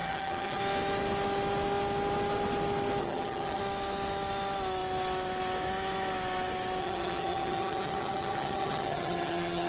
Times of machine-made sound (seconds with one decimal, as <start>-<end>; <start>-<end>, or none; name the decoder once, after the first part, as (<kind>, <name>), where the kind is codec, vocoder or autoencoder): 0.0-0.6 (vocoder, HiFi-GAN); 3.0-3.6; 6.8-9.7